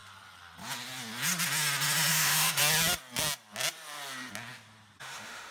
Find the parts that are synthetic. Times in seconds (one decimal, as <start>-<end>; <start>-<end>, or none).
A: 2.1-2.6; 5.0-5.5